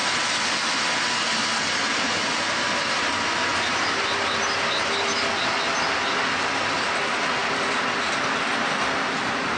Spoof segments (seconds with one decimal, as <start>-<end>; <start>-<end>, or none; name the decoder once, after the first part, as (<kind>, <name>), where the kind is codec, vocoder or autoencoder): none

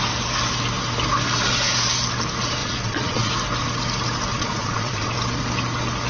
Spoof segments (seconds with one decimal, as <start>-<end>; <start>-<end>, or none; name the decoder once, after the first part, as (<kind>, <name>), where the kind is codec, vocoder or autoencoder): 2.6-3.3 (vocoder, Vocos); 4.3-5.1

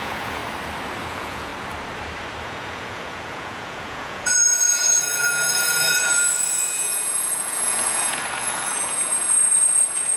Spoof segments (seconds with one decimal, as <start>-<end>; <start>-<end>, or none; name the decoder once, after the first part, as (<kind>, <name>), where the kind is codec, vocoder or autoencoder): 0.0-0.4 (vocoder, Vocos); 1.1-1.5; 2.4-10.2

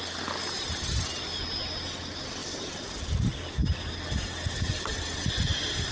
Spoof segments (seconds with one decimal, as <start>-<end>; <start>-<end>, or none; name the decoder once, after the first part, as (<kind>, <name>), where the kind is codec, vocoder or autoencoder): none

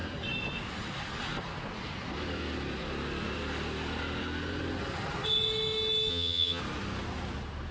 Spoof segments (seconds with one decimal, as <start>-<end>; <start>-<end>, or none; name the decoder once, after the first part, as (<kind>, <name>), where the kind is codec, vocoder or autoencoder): 6.1-6.6 (vocoder, HiFi-GAN)

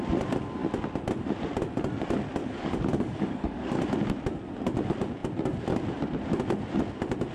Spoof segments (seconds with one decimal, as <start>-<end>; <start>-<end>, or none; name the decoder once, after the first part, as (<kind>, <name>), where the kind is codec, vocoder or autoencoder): 2.4-3.8 (codec, DAC)

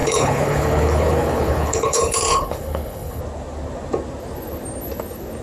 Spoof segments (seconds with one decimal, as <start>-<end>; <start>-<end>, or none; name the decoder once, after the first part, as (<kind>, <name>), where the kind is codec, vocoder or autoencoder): 0.0-3.2 (codec, HILCodec)

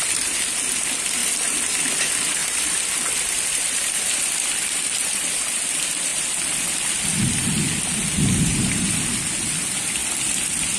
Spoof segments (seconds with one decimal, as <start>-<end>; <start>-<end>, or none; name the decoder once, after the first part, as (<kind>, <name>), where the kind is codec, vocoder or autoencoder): 1.2-1.9 (vocoder, BigVGAN v2); 2.4-5.6; 6.1-9.3